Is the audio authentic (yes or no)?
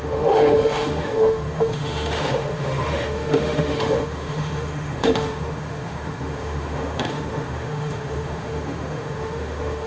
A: no